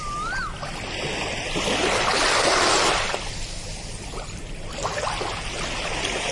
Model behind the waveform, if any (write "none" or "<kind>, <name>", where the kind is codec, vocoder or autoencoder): none